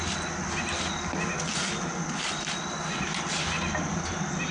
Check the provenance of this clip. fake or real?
real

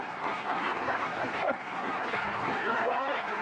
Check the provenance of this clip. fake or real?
fake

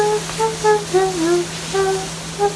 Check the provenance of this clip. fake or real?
real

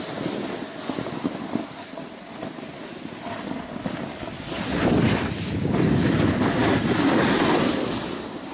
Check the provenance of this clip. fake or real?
real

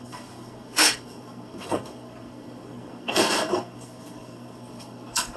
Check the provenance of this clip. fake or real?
fake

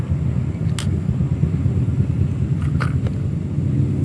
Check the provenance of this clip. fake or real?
real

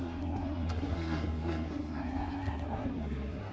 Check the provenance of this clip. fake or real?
fake